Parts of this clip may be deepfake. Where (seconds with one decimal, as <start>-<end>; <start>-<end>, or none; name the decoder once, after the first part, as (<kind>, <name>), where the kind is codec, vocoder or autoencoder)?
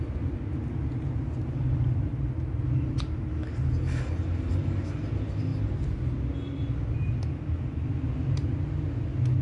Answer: none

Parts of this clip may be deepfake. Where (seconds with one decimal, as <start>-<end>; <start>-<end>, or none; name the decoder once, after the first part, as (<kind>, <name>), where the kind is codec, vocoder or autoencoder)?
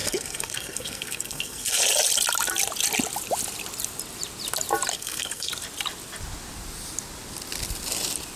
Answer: 0.0-1.8 (codec, SNAC); 4.9-5.5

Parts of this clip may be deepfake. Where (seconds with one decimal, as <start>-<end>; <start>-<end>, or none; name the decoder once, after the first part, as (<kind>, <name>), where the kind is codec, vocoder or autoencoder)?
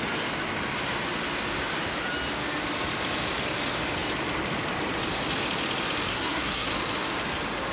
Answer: 6.1-6.7 (codec, SNAC)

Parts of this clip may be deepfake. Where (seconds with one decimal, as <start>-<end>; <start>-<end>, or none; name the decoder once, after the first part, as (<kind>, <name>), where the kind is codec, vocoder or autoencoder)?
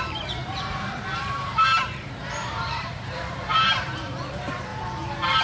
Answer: 0.0-4.7 (vocoder, BigVGAN v2)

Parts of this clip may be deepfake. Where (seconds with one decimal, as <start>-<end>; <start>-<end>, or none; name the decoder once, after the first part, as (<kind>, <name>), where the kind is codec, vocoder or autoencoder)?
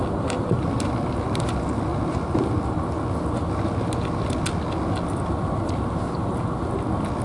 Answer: none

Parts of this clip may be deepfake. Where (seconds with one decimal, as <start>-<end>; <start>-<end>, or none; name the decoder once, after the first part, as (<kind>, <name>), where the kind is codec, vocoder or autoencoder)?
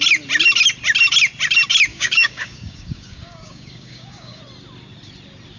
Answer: 1.9-4.4 (codec, DAC)